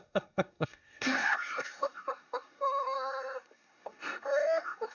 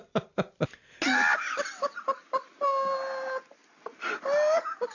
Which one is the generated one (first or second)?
first